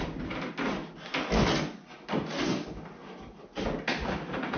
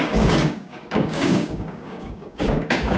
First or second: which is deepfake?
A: second